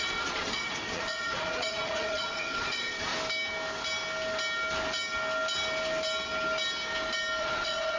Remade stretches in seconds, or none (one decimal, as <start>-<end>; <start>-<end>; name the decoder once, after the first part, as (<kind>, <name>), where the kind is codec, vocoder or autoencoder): 0.0-3.1 (vocoder, Vocos); 7.4-8.0